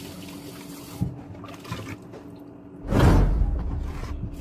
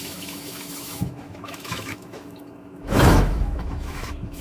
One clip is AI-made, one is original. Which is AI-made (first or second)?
second